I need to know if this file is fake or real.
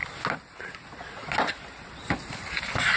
real